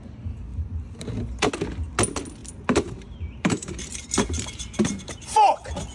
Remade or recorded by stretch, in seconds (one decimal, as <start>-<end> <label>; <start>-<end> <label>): 0.0-0.5 recorded; 0.5-1.5 remade; 1.5-2.4 recorded; 2.4-5.1 remade; 5.1-5.9 recorded